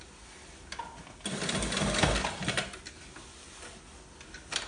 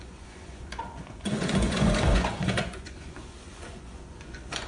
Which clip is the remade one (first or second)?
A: second